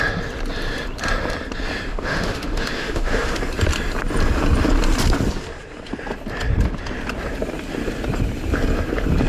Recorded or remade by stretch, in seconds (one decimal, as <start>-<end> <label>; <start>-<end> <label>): 0.0-1.9 recorded; 1.9-3.4 remade; 3.4-9.3 recorded